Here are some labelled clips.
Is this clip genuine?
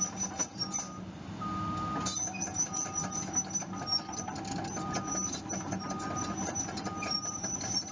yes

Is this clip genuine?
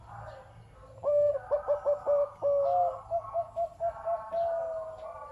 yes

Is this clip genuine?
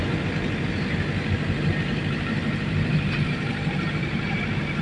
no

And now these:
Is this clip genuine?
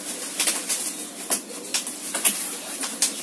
yes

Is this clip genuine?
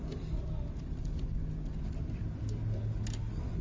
yes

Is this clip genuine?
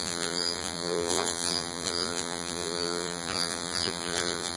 no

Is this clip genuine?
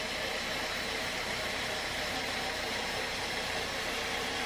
no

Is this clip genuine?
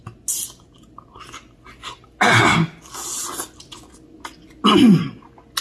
yes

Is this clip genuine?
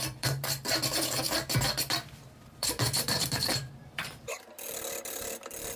no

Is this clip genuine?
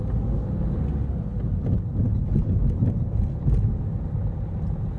yes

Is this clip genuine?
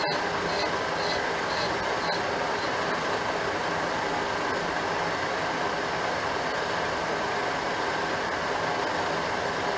yes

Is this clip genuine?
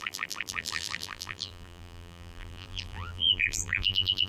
no